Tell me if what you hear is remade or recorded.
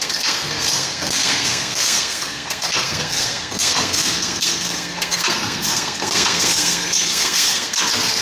remade